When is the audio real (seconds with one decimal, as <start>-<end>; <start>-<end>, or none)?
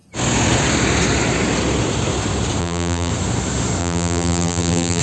0.0-2.6; 3.1-3.8